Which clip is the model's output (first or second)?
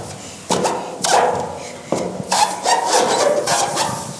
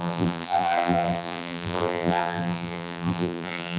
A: second